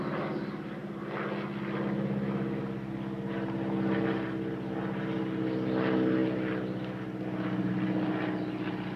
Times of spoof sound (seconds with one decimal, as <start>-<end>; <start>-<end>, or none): none